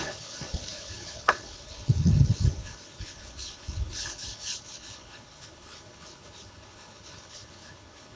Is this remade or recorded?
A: remade